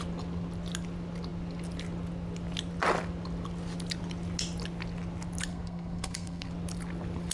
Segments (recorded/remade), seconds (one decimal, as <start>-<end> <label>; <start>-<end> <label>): 0.0-5.5 recorded; 5.5-6.5 remade; 6.5-7.3 recorded